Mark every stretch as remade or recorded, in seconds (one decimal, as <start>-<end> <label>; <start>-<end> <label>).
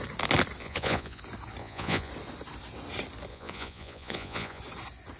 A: 0.0-0.6 recorded; 0.6-1.2 remade; 1.2-1.6 recorded; 1.6-2.1 remade; 2.1-3.3 recorded; 3.3-4.6 remade; 4.6-5.2 recorded